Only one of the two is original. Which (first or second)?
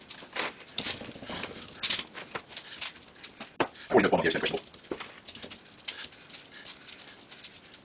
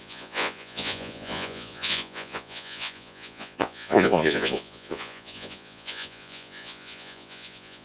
first